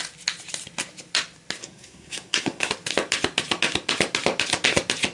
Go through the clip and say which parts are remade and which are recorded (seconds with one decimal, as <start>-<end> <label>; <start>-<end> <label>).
0.0-1.6 recorded; 1.6-2.7 remade; 2.7-5.1 recorded